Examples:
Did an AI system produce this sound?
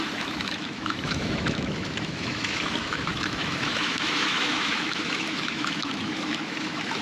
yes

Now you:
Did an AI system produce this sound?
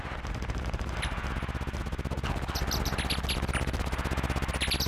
no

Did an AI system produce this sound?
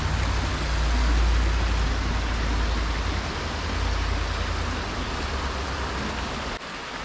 no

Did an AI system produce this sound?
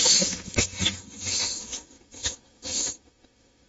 yes